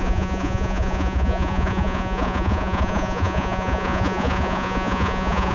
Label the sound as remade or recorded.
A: remade